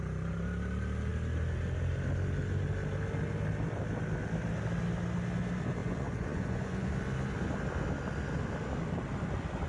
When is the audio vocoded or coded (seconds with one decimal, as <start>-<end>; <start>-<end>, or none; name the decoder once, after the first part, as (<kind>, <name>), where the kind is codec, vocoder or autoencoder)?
5.8-6.9 (vocoder, Vocos)